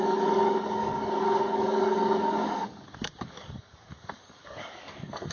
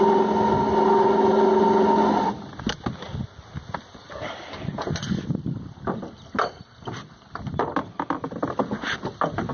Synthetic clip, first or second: first